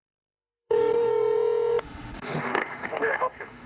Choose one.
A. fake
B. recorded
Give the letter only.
A